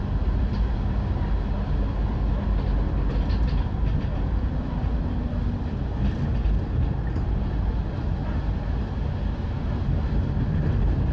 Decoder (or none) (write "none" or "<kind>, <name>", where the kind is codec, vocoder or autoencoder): none